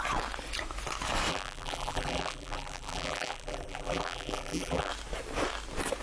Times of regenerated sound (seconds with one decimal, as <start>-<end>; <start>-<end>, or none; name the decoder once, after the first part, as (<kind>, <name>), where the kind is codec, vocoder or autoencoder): 1.3-4.9 (vocoder, BigVGAN v2)